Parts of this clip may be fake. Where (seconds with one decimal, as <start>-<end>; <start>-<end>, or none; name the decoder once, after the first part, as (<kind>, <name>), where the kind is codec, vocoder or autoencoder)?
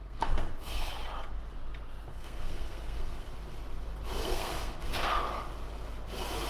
0.0-0.9 (codec, SNAC); 2.1-3.3; 4.2-5.2